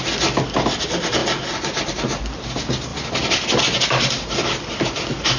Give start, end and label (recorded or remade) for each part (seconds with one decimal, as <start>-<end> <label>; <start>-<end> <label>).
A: 0.0-5.4 recorded